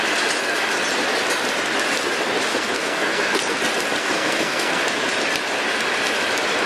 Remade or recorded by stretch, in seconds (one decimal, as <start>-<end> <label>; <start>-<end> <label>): 0.0-2.5 recorded; 2.5-3.6 remade; 3.6-4.0 recorded; 4.0-4.8 remade; 4.8-6.7 recorded